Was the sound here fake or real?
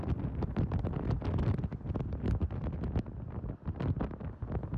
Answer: real